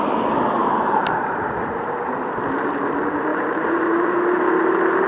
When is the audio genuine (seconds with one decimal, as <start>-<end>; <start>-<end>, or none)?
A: 0.0-0.6; 2.1-3.3; 4.3-5.1